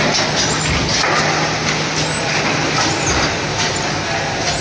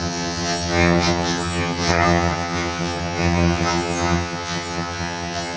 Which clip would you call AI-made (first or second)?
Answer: second